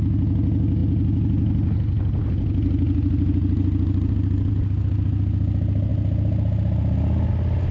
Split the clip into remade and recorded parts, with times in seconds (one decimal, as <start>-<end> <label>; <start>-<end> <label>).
0.0-7.7 recorded